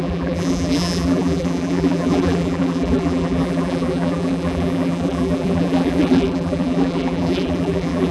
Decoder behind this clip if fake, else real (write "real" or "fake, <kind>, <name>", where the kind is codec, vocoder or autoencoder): fake, vocoder, BigVGAN v2